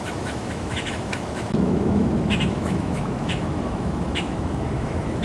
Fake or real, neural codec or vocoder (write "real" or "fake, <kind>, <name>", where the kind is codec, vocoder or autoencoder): fake, autoencoder, DAC-VAE